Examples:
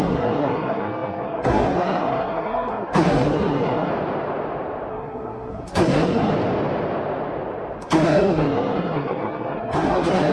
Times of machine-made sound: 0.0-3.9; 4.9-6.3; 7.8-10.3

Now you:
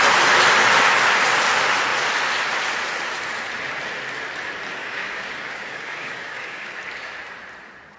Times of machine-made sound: 4.8-6.7